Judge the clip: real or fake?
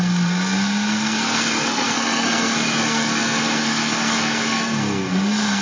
fake